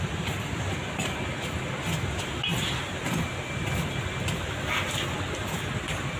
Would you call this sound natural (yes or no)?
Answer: yes